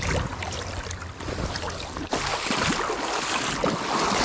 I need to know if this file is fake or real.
real